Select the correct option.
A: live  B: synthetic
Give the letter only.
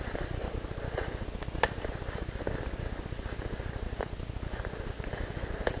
A